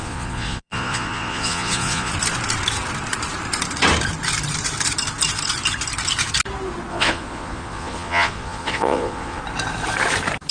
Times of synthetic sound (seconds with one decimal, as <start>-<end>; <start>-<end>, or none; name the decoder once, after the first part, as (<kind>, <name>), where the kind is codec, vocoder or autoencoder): 0.0-2.1 (vocoder, Vocos); 6.9-9.4